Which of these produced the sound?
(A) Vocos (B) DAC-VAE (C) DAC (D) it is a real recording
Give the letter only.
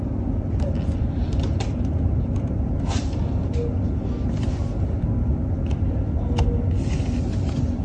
D